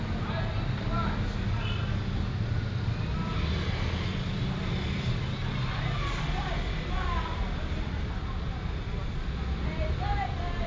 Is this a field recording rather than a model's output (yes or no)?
yes